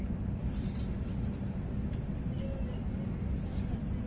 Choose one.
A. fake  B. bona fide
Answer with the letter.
B